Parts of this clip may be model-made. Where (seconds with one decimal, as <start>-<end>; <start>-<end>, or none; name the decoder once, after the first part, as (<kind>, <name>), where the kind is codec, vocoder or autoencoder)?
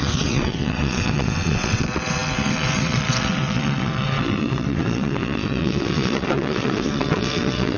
0.0-7.8 (vocoder, WaveNeXt)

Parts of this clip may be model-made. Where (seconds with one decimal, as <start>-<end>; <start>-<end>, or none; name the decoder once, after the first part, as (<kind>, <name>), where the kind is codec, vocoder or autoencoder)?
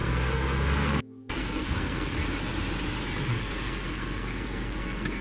0.0-2.2 (codec, SNAC); 3.3-5.2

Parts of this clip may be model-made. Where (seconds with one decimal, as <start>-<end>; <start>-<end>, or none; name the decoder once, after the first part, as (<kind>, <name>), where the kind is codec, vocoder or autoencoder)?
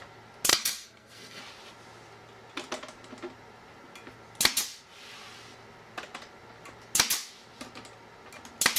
0.5-1.4 (codec, SNAC)